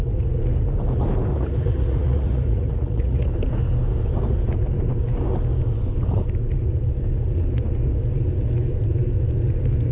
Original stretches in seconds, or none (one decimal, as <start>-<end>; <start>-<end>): 0.0-1.3; 3.3-9.9